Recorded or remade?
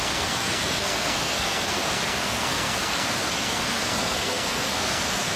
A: remade